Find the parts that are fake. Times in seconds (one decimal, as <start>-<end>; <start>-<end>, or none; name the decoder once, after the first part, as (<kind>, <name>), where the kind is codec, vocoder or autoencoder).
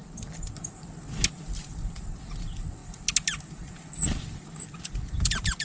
none